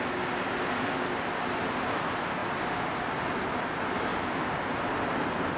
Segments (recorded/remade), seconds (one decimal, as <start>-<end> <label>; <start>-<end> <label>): 0.0-5.6 recorded